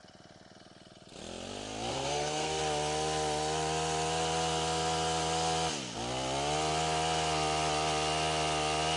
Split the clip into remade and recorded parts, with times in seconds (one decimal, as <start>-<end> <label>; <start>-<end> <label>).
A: 0.0-1.9 recorded; 1.9-2.6 remade; 2.6-9.0 recorded